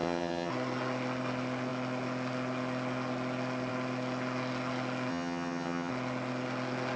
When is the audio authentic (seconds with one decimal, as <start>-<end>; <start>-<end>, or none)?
0.5-5.1; 5.9-7.0